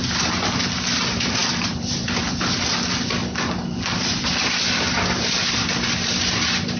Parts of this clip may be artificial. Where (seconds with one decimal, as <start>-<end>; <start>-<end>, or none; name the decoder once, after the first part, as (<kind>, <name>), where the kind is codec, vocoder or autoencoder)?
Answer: none